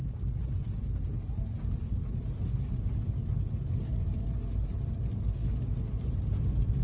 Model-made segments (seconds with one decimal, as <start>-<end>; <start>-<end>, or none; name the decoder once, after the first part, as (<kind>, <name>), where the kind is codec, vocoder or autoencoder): none